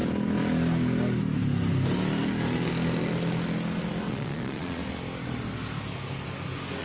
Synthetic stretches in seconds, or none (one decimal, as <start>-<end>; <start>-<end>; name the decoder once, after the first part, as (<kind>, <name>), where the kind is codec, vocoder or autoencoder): 4.1-4.8 (vocoder, Vocos)